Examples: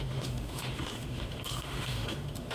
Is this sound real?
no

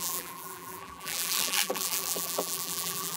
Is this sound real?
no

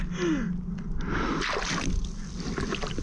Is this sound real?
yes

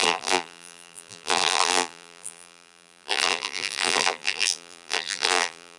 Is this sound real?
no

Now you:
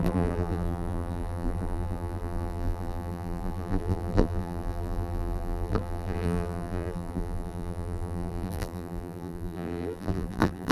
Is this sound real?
no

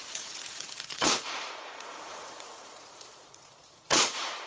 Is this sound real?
no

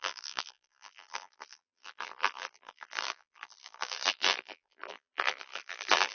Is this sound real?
no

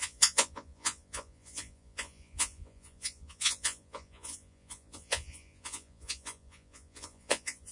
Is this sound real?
no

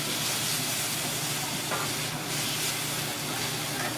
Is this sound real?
yes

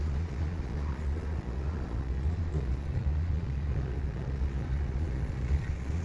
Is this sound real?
no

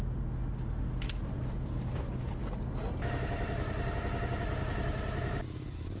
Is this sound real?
yes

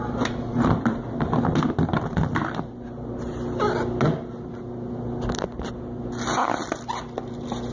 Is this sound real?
yes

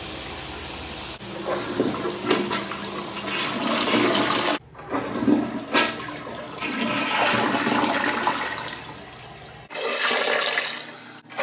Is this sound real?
yes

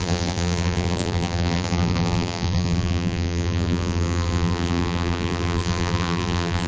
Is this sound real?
no